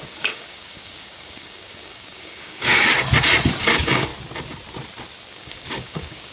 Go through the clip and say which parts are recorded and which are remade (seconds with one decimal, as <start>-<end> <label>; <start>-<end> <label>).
0.0-2.9 remade; 2.9-3.6 recorded; 3.6-4.1 remade; 4.1-5.3 recorded; 5.3-6.3 remade